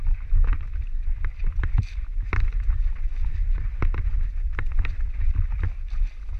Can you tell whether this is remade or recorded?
recorded